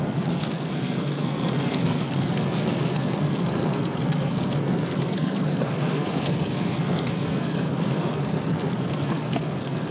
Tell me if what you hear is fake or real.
fake